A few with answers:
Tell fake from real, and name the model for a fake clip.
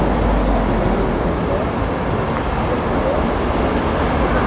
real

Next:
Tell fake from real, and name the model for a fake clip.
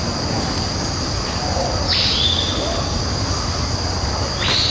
real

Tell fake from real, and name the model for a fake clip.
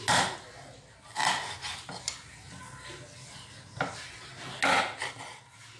real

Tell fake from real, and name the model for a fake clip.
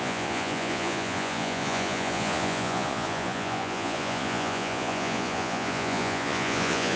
fake, vocoder, Vocos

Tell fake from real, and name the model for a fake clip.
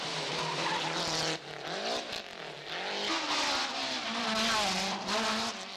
real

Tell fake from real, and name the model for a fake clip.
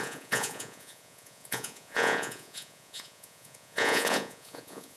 fake, vocoder, Vocos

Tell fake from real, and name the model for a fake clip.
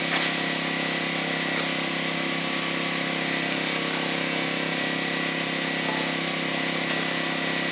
real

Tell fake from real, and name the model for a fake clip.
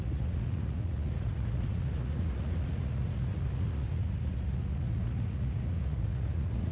fake, vocoder, Vocos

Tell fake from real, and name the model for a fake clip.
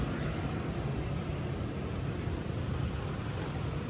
real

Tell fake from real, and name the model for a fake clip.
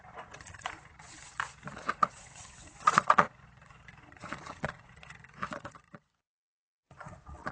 fake, vocoder, Vocos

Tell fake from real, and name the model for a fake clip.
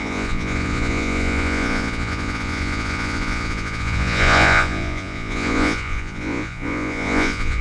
fake, vocoder, Vocos